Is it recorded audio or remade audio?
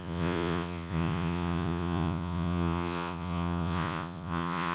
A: remade